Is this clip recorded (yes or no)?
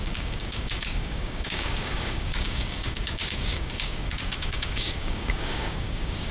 no